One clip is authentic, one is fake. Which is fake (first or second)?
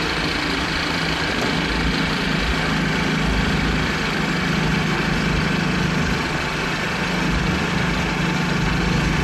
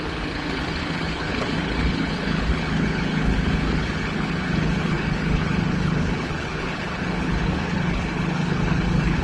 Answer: second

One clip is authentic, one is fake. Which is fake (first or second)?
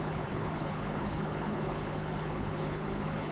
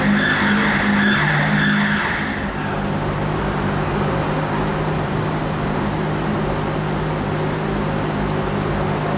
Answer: first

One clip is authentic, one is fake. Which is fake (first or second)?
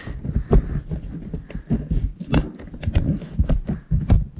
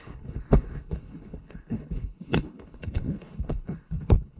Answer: second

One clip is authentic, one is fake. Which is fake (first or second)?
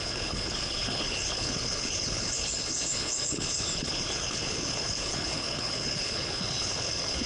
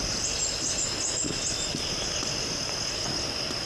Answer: first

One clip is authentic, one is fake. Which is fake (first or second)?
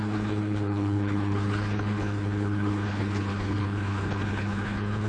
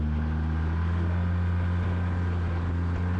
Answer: first